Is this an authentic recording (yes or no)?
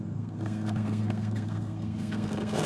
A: no